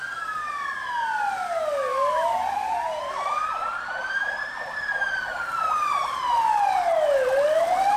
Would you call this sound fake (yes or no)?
no